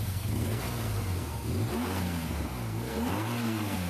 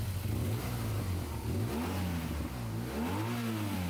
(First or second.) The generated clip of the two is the first